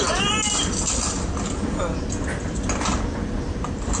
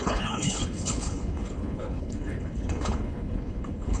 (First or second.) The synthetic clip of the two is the second